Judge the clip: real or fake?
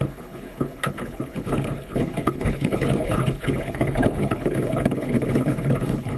fake